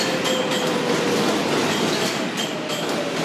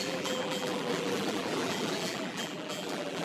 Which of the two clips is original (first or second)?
first